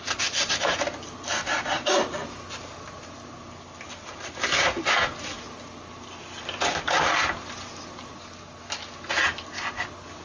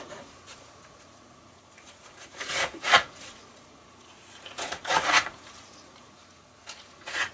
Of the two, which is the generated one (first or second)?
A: second